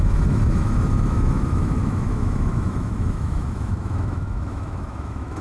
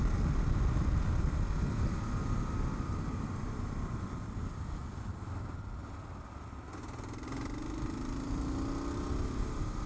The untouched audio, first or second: second